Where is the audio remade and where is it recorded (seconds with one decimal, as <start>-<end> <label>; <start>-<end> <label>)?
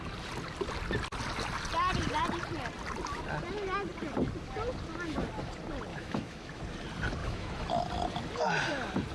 0.0-5.9 recorded; 5.9-6.6 remade; 6.6-7.2 recorded; 7.2-7.8 remade; 7.8-9.1 recorded